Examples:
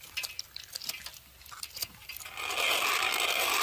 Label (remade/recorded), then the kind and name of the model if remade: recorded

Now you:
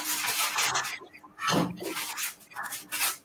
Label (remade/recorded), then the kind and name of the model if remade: recorded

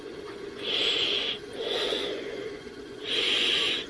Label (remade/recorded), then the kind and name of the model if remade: remade, vocoder, Vocos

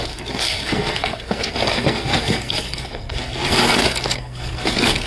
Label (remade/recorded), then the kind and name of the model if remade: remade, codec, SNAC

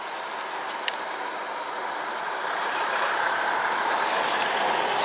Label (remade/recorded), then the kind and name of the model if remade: recorded